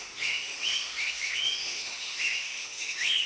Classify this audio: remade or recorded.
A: remade